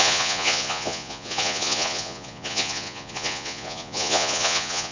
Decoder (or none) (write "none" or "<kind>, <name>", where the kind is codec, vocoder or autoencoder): vocoder, Vocos